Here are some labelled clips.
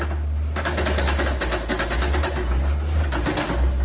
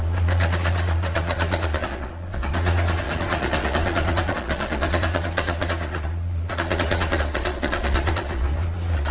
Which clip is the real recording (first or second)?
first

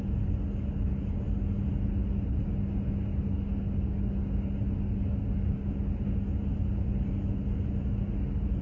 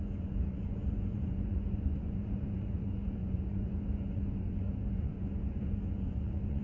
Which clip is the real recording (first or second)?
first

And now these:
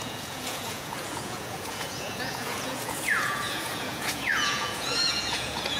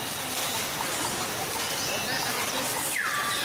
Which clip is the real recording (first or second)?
second